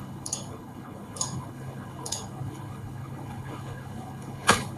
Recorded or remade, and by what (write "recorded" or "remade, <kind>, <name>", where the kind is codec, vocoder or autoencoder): remade, codec, HILCodec